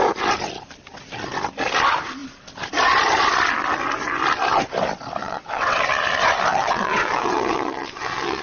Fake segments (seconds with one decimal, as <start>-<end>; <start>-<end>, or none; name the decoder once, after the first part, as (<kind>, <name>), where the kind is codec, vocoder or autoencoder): 5.2-5.8 (vocoder, WaveNeXt); 6.5-8.4